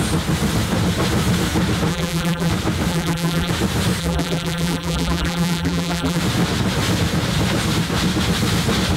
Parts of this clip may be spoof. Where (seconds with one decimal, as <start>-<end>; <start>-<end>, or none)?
1.9-2.5; 2.9-3.5; 4.0-6.2